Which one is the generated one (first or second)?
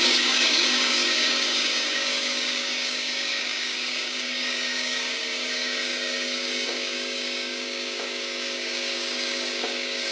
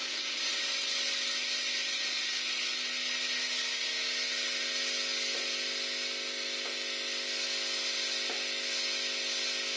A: first